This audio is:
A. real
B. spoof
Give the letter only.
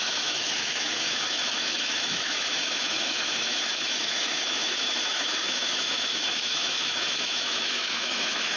B